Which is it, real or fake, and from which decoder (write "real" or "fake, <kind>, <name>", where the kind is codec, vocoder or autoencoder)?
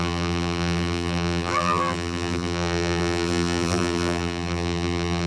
fake, vocoder, BigVGAN v2